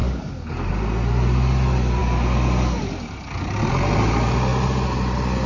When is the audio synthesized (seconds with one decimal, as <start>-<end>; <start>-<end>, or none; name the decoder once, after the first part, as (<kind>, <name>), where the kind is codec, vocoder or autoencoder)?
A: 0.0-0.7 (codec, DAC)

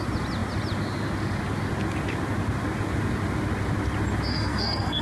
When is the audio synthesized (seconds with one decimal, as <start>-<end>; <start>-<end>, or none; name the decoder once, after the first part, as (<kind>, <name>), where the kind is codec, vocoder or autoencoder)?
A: 4.3-5.0 (codec, SNAC)

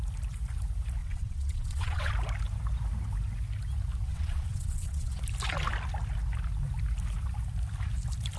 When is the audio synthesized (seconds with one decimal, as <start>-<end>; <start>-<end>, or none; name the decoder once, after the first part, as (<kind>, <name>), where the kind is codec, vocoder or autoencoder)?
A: 1.0-2.1 (vocoder, WaveNeXt); 4.1-5.2

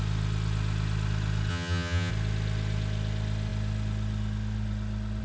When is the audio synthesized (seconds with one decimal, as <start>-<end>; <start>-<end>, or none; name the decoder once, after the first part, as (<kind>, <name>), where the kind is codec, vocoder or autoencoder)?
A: 1.5-2.1 (vocoder, HiFi-GAN)

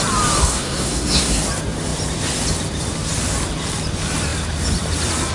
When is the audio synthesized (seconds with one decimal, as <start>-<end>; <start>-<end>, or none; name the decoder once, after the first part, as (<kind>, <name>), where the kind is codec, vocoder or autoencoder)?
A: 0.4-1.4 (codec, SNAC)

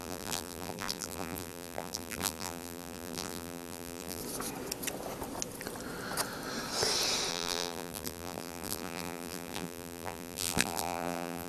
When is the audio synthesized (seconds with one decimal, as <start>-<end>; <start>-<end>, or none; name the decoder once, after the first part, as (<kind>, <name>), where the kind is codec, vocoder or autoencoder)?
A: 0.0-4.2 (vocoder, BigVGAN v2); 7.3-11.5

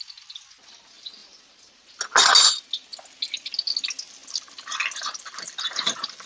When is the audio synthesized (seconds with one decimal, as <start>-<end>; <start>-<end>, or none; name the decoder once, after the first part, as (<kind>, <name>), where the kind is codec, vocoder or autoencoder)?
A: none